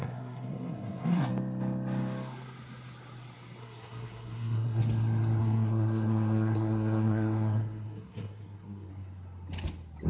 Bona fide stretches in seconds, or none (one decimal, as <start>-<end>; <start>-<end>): 1.3-3.6; 4.8-5.4; 8.9-10.1